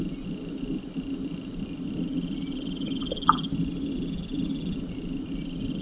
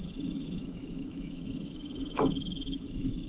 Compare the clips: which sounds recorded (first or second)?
first